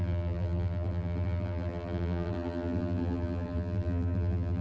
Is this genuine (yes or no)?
no